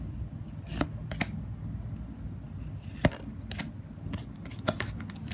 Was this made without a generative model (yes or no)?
yes